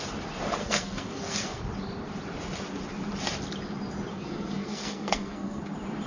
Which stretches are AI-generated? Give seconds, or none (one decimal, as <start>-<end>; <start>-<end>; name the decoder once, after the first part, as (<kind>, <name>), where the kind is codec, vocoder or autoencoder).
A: 0.6-1.6 (codec, SNAC); 4.1-5.6